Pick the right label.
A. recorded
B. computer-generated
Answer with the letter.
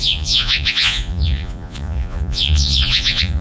B